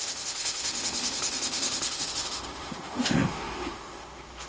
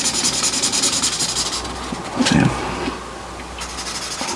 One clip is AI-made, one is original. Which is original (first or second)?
second